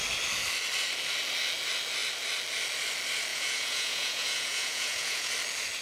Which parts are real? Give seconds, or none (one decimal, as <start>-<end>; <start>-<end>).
0.0-3.3; 5.3-5.8